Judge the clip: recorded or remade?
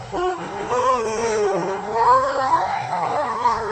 remade